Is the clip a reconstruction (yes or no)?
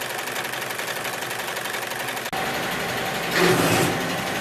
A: no